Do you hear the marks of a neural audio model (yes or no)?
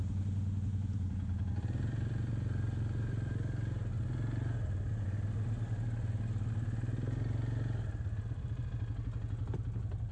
no